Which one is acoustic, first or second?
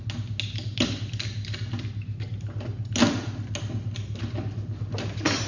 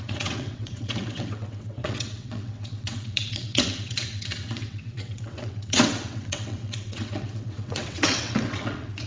first